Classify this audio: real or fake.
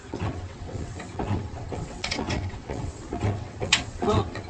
fake